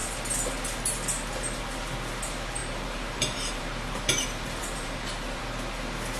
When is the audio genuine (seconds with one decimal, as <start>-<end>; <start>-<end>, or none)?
0.0-2.6; 5.4-6.2